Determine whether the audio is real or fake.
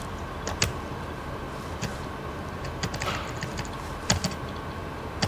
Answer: real